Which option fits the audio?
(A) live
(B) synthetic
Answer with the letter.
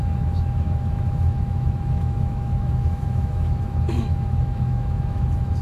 B